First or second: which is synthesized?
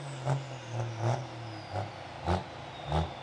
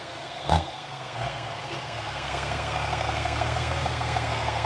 second